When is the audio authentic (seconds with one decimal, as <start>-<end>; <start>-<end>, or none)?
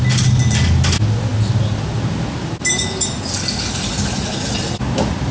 0.0-5.3